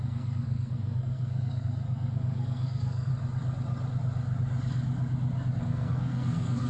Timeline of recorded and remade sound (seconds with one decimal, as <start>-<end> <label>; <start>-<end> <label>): 0.0-3.1 remade; 3.1-5.6 recorded; 5.6-6.7 remade